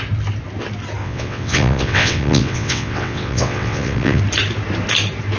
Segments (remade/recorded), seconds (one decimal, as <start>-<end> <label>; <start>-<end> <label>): 0.0-1.0 recorded; 1.0-4.2 remade; 4.2-5.4 recorded